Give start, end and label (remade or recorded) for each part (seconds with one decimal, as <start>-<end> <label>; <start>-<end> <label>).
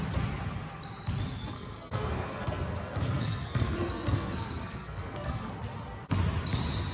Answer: 0.0-1.4 recorded; 1.4-5.5 remade; 5.5-6.9 recorded